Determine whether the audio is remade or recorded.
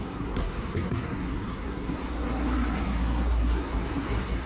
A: remade